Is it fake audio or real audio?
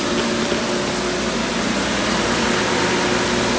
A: real